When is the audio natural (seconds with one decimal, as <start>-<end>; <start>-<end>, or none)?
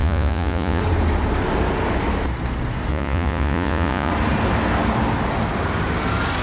0.8-2.9; 4.1-6.4